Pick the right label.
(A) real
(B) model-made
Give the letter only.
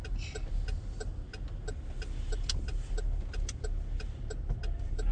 A